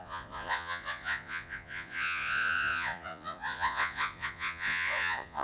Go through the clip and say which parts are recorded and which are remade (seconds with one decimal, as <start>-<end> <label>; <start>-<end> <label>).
0.0-5.4 remade

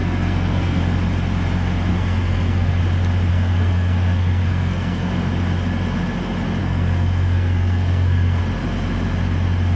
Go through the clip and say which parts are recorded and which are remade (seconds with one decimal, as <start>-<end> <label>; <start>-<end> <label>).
0.0-0.8 remade; 0.8-1.9 recorded; 1.9-2.8 remade; 2.8-3.3 recorded; 3.3-5.1 remade; 5.1-6.6 recorded; 6.6-8.4 remade; 8.4-9.8 recorded

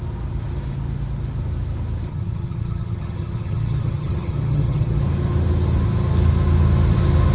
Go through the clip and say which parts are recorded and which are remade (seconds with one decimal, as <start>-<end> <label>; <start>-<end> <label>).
0.0-2.1 recorded; 2.1-5.0 remade; 5.0-7.3 recorded

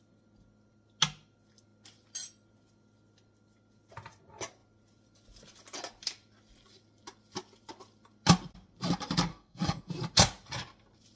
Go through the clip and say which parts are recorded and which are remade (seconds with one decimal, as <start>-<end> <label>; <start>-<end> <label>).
0.0-9.3 recorded; 9.3-9.9 remade; 9.9-11.2 recorded

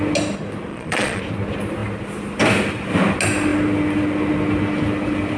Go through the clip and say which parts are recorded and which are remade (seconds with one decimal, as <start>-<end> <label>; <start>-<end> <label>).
0.0-0.7 recorded; 0.7-1.2 remade; 1.2-5.4 recorded

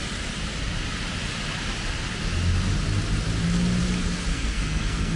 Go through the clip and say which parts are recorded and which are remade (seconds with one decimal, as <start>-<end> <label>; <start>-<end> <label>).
0.0-4.3 recorded; 4.3-5.2 remade

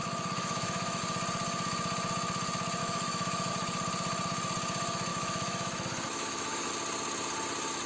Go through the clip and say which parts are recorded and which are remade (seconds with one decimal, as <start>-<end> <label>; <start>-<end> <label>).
0.0-1.0 remade; 1.0-2.8 recorded; 2.8-3.5 remade; 3.5-5.1 recorded; 5.1-6.7 remade; 6.7-7.9 recorded